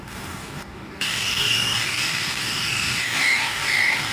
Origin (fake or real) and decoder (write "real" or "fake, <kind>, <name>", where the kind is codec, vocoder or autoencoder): fake, codec, DAC